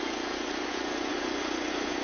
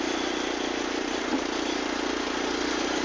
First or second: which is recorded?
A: second